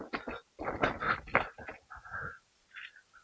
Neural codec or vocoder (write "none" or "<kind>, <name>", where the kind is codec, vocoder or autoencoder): none